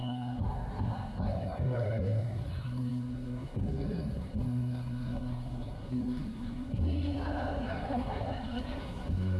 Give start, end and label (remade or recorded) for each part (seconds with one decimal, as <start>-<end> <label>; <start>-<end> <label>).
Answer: 0.0-9.4 remade